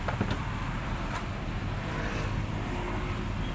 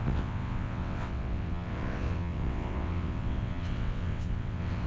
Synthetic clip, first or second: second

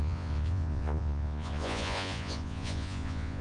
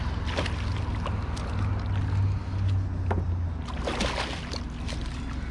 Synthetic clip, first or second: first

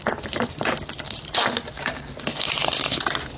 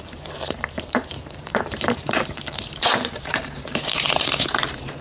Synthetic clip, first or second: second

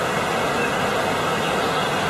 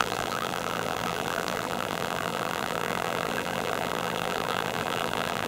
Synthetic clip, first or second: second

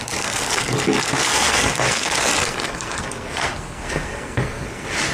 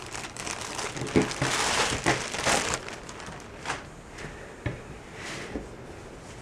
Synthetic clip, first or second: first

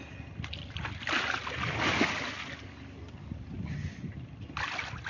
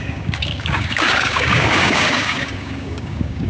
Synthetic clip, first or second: second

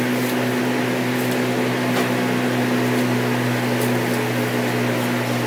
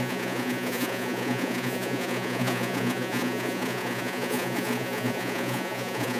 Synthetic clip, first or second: second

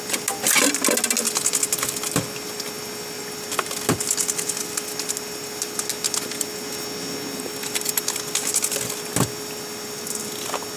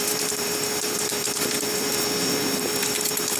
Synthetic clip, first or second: second